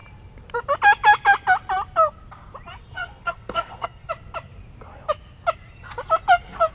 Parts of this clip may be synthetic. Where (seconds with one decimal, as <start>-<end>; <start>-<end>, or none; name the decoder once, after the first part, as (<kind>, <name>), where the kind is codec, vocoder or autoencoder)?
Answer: 2.8-4.1 (codec, SNAC)